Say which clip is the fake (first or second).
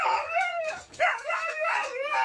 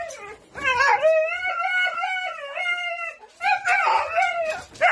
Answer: first